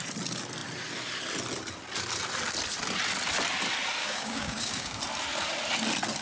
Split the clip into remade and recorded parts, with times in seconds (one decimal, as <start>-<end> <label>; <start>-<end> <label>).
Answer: 0.0-4.0 recorded; 4.0-5.0 remade; 5.0-6.2 recorded